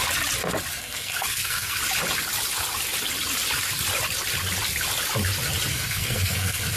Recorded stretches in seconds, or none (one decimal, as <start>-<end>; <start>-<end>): 0.0-0.7; 1.8-5.7